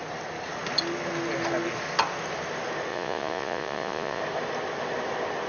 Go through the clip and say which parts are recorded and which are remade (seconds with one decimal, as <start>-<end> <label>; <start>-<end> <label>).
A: 0.0-2.9 recorded; 2.9-4.2 remade; 4.2-5.5 recorded